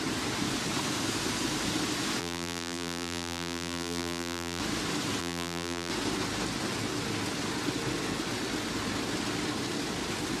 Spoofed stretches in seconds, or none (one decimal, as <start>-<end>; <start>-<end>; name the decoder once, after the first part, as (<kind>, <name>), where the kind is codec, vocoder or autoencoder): 2.2-4.6 (vocoder, BigVGAN v2); 5.2-5.9